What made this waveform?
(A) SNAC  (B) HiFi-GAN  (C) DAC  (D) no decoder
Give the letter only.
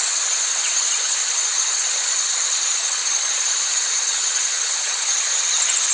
B